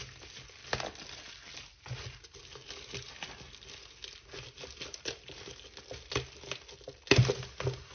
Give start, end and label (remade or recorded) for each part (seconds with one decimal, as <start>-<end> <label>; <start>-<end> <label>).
0.0-7.9 recorded